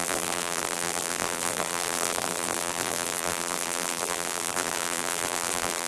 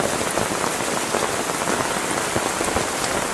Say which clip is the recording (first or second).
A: second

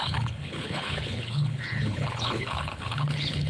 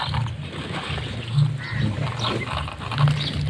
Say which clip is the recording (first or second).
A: second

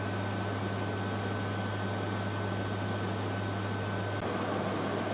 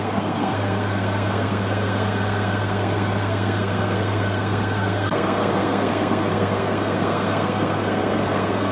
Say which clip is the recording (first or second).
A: first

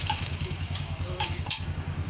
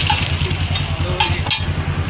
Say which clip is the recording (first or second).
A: second